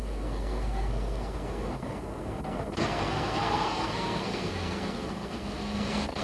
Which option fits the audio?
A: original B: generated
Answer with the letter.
B